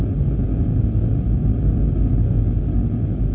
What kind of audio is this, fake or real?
real